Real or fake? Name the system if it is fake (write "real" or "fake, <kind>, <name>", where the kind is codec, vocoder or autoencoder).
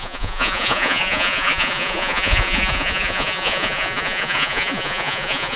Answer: fake, vocoder, Vocos